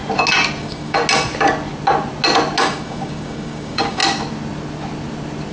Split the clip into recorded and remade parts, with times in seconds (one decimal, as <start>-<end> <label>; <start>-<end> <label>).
0.0-0.6 recorded; 0.6-1.0 remade; 1.0-2.6 recorded; 2.6-4.0 remade; 4.0-5.5 recorded